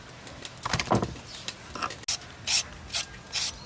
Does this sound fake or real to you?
real